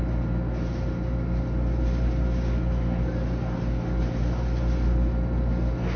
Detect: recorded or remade recorded